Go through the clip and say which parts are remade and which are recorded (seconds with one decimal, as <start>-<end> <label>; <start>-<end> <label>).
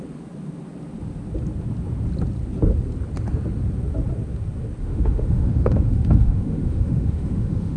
0.0-4.8 recorded; 4.8-7.8 remade